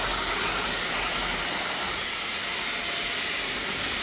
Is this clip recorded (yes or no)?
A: yes